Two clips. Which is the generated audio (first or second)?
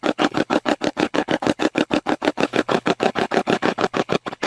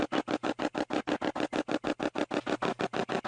first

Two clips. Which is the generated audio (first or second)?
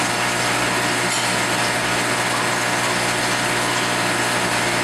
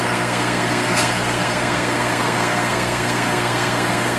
second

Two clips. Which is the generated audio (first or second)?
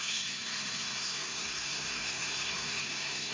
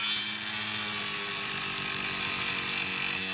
first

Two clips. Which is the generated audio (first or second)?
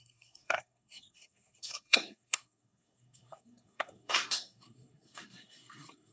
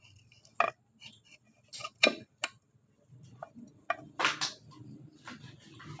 first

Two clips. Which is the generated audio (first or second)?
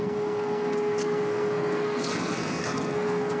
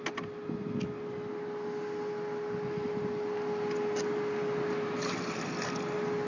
first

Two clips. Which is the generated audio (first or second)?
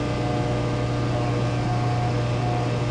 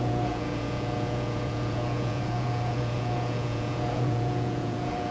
second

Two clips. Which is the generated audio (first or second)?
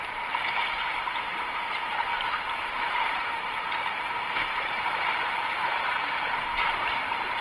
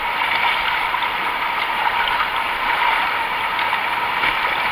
first